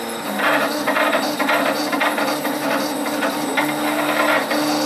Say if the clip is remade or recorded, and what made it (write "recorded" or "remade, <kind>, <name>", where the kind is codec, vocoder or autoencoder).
recorded